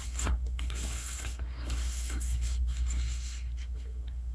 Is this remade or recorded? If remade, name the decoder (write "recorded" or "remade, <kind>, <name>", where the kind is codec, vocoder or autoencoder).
remade, codec, SNAC